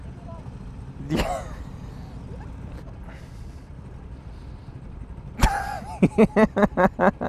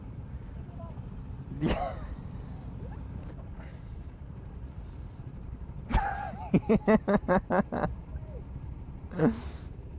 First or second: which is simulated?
second